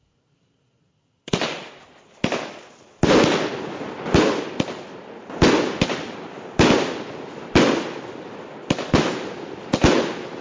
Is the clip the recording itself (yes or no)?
yes